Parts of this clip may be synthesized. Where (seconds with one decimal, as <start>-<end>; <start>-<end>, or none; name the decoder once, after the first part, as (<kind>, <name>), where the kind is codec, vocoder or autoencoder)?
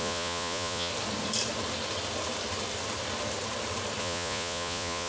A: 0.0-0.9 (vocoder, Vocos); 4.0-5.1